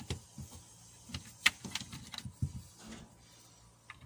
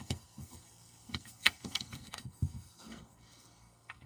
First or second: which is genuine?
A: first